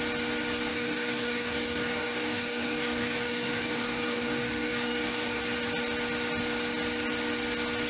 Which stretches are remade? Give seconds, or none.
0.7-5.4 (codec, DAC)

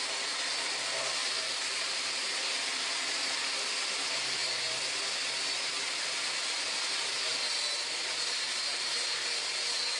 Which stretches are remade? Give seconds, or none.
1.2-2.0 (vocoder, BigVGAN v2); 2.7-3.5

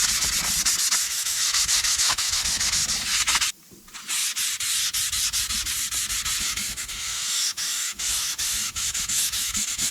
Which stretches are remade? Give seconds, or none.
1.0-2.8 (autoencoder, DAC-VAE); 6.4-9.9

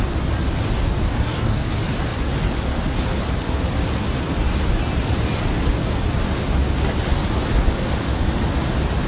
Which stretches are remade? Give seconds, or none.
1.1-1.7 (codec, DAC)

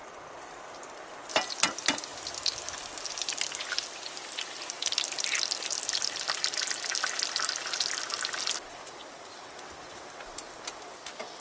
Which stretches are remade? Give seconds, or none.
none

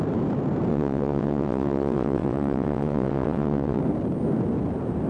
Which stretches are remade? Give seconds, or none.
0.7-3.8 (vocoder, WaveNeXt)

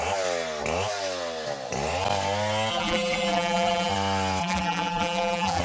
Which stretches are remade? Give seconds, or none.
2.7-3.9 (vocoder, BigVGAN v2); 4.4-5.6